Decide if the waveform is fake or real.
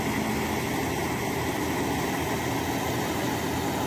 real